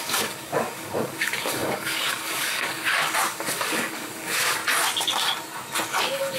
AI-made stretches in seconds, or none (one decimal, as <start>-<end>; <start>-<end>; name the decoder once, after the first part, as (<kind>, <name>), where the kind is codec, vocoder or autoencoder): 0.0-4.6 (codec, DAC); 5.9-6.4